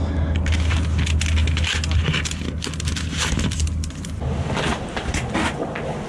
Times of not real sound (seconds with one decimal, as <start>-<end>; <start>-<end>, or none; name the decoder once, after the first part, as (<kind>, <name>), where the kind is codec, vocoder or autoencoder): none